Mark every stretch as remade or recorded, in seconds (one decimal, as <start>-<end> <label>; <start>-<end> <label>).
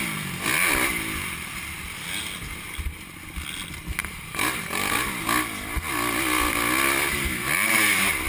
0.0-4.0 recorded; 4.0-5.2 remade; 5.2-8.3 recorded